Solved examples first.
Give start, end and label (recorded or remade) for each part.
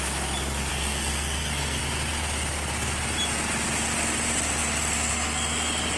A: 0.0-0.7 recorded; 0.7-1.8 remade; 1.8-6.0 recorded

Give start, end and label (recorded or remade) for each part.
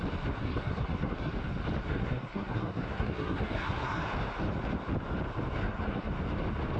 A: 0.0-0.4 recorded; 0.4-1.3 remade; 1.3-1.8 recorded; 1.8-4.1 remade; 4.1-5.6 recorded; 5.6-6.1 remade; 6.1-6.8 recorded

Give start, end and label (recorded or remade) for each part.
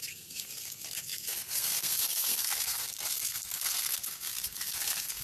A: 0.0-5.2 remade